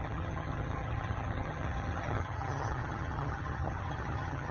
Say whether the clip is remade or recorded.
remade